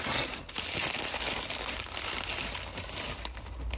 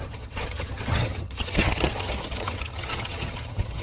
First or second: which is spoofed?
second